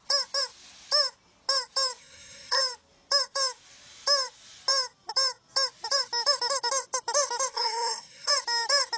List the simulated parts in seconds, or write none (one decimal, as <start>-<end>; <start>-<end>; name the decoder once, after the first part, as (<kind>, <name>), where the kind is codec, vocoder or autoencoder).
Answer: 2.0-2.6 (codec, SNAC); 7.5-8.3